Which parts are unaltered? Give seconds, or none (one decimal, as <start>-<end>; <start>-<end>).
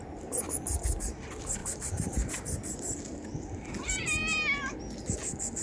0.0-1.6; 3.8-5.6